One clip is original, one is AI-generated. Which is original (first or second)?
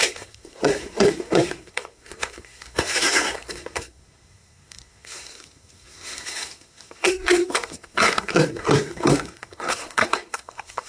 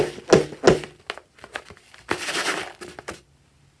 second